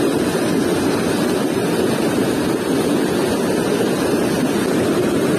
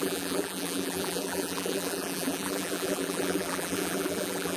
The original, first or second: first